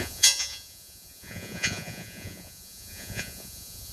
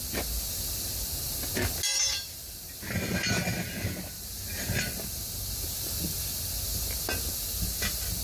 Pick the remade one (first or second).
first